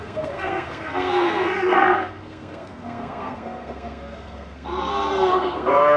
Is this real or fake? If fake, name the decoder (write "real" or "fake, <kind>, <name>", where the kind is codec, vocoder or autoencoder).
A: fake, codec, SNAC